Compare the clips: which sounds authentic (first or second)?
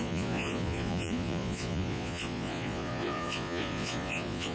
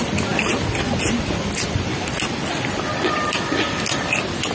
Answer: second